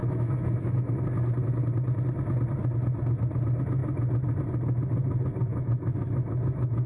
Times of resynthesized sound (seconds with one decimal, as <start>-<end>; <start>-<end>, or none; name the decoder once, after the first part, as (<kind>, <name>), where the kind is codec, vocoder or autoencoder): 0.0-1.0 (autoencoder, DAC-VAE); 5.5-6.9